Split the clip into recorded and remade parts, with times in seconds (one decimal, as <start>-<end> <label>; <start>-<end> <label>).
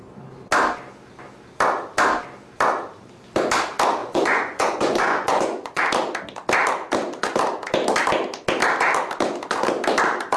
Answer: 0.0-4.0 recorded; 4.0-5.8 remade; 5.8-10.4 recorded